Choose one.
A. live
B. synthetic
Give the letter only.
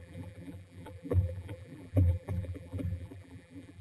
B